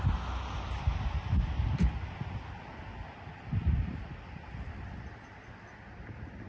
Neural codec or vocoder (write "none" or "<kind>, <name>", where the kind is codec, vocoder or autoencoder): none